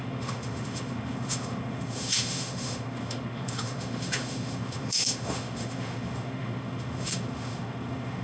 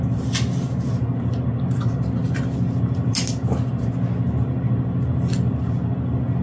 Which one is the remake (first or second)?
first